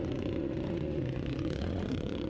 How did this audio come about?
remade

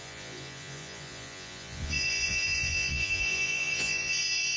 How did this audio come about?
remade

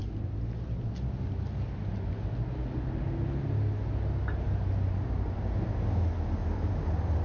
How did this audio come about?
recorded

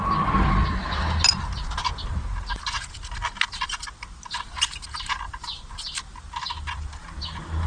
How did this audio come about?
recorded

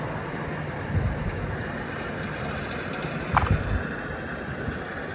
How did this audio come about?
recorded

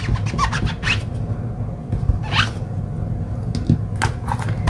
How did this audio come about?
recorded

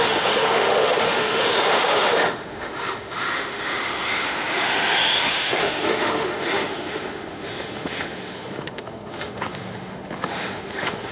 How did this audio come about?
remade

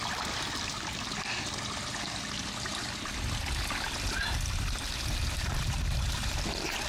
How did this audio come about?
recorded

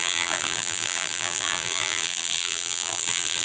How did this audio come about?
remade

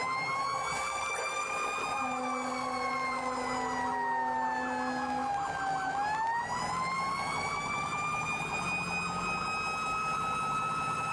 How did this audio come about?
recorded